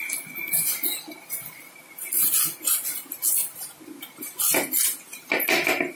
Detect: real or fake real